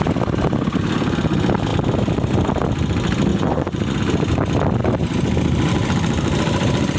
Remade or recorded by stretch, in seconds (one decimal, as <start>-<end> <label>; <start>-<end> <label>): 0.0-3.3 recorded; 3.3-4.0 remade; 4.0-7.0 recorded